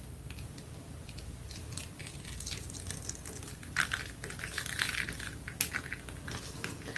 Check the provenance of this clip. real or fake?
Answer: real